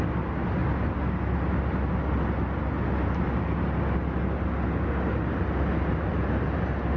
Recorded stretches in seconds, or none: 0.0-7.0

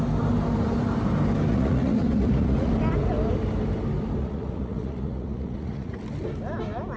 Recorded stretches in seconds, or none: 0.0-1.5; 2.7-4.2; 6.0-7.0

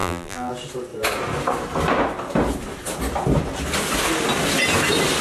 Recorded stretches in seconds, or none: 0.5-5.2